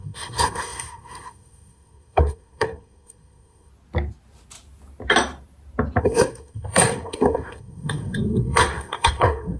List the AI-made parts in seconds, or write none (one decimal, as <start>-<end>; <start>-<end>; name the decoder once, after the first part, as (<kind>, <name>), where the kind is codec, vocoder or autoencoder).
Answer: 0.0-3.7 (codec, SNAC); 6.0-9.6